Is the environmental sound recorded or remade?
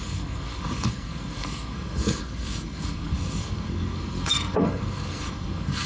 remade